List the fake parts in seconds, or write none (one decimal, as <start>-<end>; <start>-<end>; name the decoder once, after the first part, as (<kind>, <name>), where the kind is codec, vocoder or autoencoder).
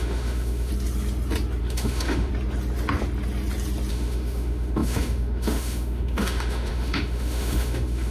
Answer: 0.0-0.7 (autoencoder, DAC-VAE); 1.6-2.3; 3.9-8.1